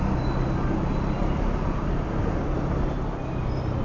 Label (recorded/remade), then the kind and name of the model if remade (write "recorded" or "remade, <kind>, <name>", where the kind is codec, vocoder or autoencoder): recorded